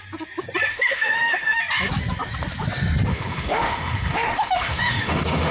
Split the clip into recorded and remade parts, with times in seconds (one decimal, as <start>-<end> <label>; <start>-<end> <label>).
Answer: 0.0-0.7 recorded; 0.7-1.6 remade; 1.6-3.1 recorded; 3.1-5.5 remade